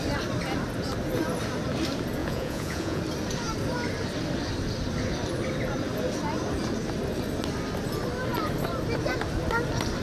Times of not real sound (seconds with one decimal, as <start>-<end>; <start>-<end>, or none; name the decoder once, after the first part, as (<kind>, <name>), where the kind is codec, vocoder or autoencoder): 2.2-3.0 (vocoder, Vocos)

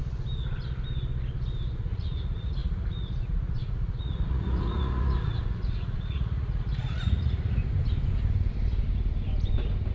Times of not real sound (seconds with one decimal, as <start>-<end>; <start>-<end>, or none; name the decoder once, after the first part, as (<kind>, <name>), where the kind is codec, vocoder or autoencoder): 1.7-7.6 (vocoder, Vocos)

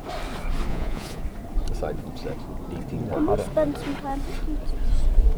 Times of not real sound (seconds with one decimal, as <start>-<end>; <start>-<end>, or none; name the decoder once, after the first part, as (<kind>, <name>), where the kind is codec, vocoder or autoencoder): 0.7-1.2 (vocoder, Vocos)

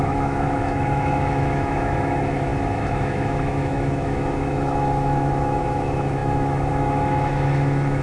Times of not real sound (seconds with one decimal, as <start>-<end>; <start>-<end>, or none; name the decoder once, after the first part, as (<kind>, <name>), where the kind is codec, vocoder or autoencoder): 0.0-8.0 (autoencoder, DAC-VAE)

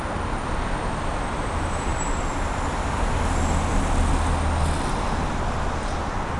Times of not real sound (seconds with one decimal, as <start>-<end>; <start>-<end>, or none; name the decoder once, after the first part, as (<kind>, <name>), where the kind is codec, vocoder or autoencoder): none